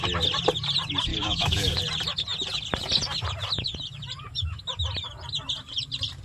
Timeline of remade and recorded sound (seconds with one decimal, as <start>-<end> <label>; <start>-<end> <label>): 0.0-1.1 recorded; 1.1-1.8 remade; 1.8-6.2 recorded